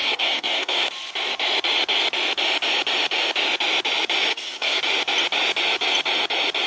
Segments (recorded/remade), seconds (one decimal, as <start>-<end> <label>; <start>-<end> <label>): 0.0-0.9 remade; 0.9-4.3 recorded; 4.3-4.8 remade; 4.8-6.7 recorded